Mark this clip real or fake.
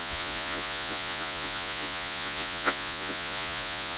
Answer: fake